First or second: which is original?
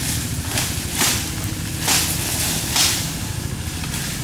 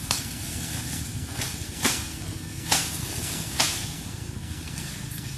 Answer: first